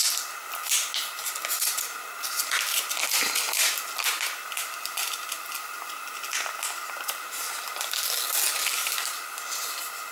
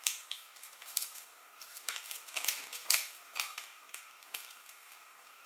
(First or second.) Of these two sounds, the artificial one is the second